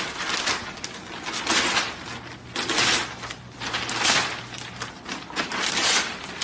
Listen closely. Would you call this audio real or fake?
real